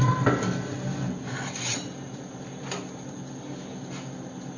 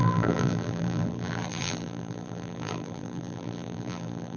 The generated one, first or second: second